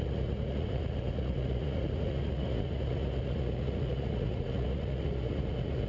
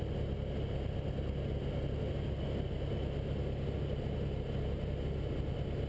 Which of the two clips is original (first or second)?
second